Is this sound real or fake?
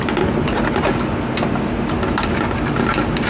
real